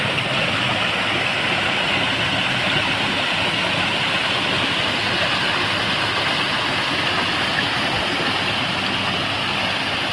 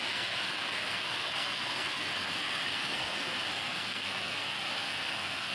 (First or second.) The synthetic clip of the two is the second